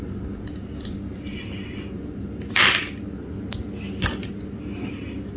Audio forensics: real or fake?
real